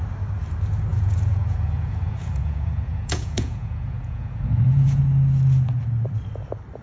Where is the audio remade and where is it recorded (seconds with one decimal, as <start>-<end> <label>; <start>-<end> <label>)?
0.0-0.9 recorded; 0.9-5.0 remade; 5.0-6.8 recorded